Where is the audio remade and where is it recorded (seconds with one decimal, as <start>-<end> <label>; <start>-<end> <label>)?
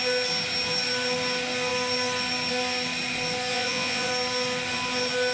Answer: 0.0-3.5 recorded; 3.5-4.1 remade; 4.1-5.3 recorded